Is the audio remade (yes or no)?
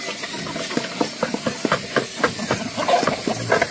no